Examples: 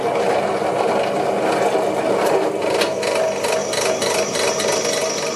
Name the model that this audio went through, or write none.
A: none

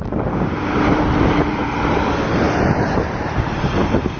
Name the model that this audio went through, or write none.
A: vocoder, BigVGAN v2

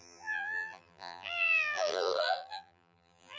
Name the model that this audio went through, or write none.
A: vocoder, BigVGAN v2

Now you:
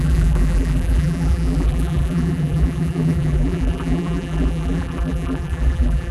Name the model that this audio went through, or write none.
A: vocoder, BigVGAN v2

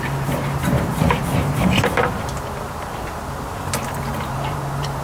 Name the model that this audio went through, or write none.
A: vocoder, BigVGAN v2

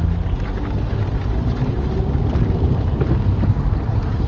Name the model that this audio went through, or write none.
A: none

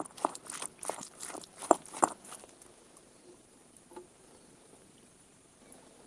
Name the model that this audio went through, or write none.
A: none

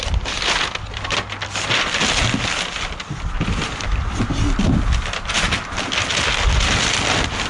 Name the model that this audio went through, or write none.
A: none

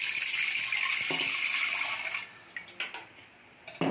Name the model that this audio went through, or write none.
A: none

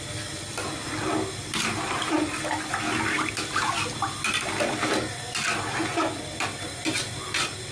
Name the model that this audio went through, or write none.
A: none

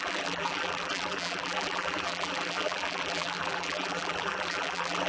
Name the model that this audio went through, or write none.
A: vocoder, BigVGAN v2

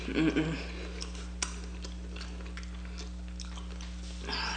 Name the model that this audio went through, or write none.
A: none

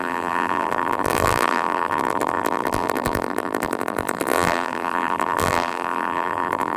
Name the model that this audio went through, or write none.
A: vocoder, BigVGAN v2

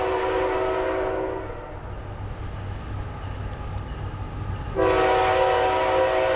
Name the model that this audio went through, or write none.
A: none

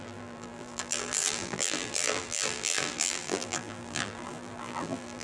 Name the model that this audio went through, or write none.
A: vocoder, BigVGAN v2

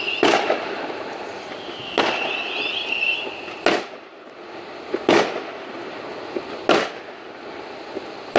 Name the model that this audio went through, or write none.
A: none